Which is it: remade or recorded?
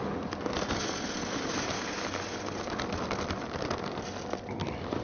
recorded